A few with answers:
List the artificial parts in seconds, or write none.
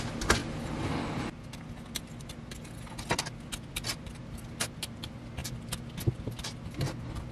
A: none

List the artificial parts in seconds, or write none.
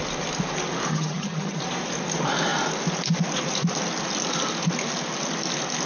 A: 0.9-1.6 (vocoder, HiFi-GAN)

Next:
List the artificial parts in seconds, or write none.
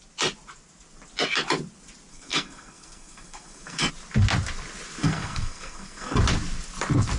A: 2.1-3.9 (codec, SNAC); 5.0-6.2